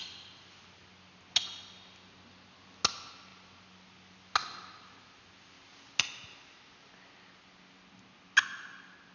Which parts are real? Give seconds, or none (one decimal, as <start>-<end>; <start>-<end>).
0.0-9.1